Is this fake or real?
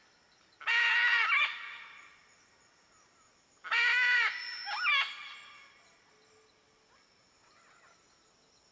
real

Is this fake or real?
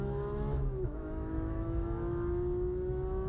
fake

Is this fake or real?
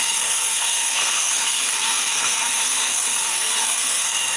fake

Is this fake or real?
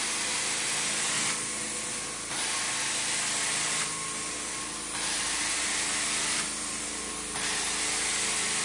real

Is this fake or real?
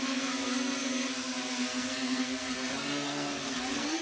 fake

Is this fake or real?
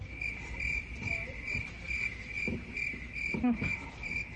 real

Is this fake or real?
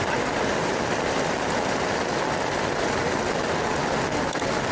fake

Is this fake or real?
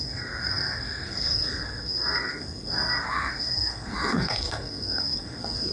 fake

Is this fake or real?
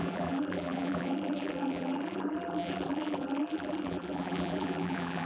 fake